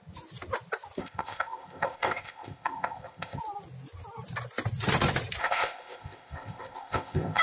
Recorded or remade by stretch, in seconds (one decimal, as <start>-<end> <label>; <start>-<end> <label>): 0.0-1.0 recorded; 1.0-3.4 remade; 3.4-5.4 recorded; 5.4-7.4 remade